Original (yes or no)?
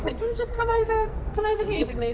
no